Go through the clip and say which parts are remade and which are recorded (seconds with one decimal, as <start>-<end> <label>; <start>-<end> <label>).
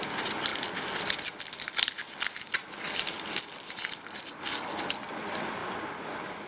0.0-6.5 recorded